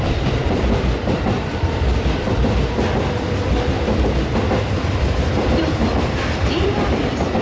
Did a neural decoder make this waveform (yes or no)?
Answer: yes